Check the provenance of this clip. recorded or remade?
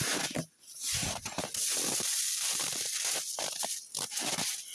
recorded